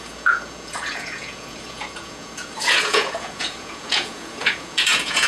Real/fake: fake